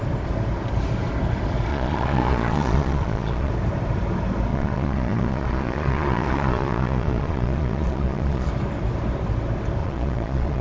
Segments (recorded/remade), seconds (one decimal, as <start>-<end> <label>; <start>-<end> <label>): 0.0-1.7 recorded; 1.7-3.5 remade; 3.5-4.5 recorded; 4.5-8.5 remade; 8.5-9.8 recorded; 9.8-10.6 remade